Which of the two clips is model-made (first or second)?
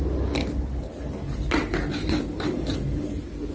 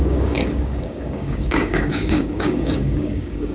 second